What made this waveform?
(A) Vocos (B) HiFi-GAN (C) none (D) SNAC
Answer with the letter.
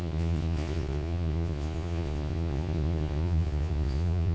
A